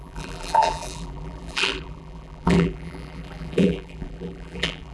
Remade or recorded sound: remade